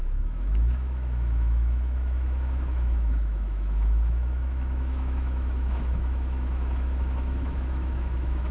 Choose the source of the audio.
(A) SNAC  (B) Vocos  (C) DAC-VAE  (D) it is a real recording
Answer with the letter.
C